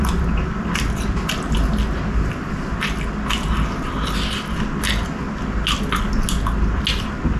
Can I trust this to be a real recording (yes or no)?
yes